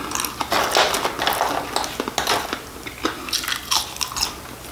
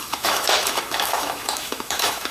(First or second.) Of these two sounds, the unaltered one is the first